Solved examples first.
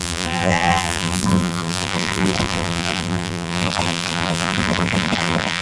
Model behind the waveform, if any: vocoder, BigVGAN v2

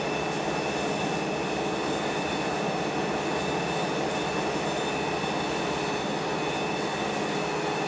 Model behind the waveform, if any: none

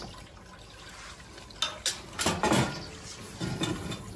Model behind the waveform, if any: none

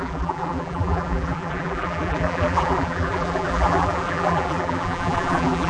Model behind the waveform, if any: vocoder, BigVGAN v2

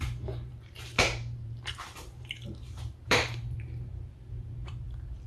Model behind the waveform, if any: vocoder, BigVGAN v2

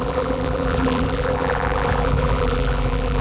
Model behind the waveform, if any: vocoder, BigVGAN v2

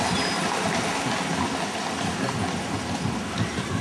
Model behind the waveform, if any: none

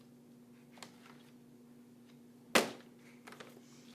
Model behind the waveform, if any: none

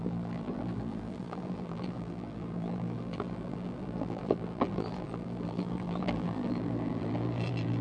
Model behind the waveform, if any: vocoder, BigVGAN v2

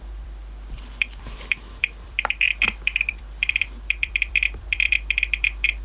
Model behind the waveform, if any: vocoder, BigVGAN v2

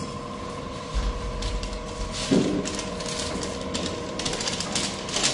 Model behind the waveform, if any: none